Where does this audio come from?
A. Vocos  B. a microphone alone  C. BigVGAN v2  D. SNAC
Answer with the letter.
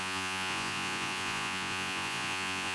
A